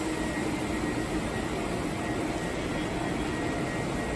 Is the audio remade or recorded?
recorded